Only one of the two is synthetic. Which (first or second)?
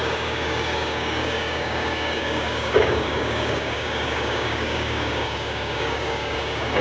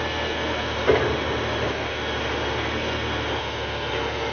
first